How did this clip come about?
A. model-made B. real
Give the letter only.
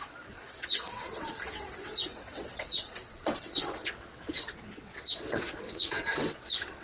A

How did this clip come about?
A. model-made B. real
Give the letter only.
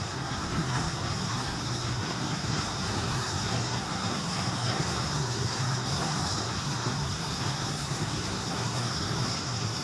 A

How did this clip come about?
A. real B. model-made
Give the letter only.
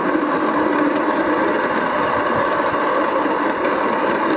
A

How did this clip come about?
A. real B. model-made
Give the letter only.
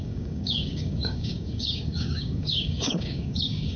B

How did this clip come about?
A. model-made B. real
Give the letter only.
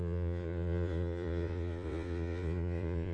A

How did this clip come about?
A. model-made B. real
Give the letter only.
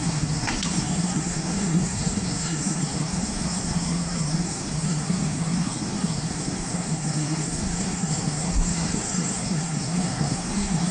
A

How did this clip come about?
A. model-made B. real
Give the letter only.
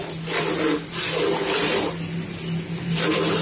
B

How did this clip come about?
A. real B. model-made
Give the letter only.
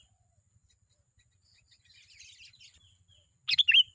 A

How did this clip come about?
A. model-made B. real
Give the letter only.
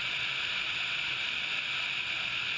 B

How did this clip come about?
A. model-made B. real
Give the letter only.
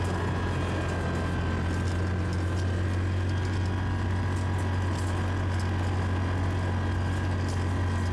B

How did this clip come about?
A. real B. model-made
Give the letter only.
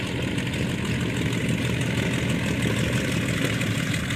A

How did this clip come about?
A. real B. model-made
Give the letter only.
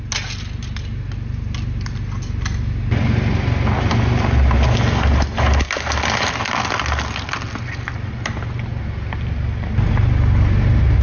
A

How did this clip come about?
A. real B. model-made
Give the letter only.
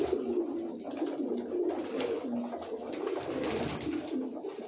A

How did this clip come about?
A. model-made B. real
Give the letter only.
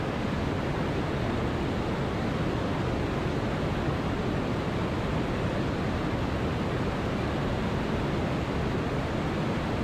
B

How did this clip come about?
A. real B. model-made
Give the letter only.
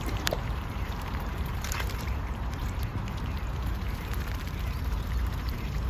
B